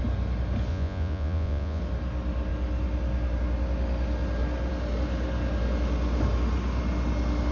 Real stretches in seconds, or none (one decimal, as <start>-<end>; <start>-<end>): 0.0-0.7; 1.8-7.5